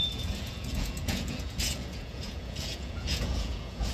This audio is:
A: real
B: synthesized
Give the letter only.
B